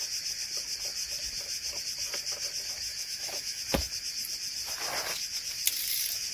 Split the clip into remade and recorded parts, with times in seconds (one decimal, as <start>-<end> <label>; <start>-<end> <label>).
0.0-2.9 recorded; 2.9-3.6 remade; 3.6-6.3 recorded